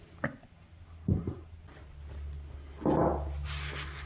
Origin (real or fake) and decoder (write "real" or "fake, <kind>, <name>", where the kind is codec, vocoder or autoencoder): real